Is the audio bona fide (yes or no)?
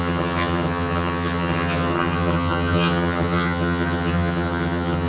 no